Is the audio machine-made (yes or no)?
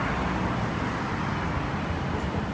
no